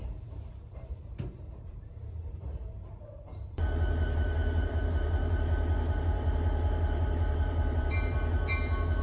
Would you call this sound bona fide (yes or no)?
no